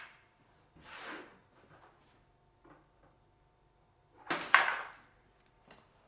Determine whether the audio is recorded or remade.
recorded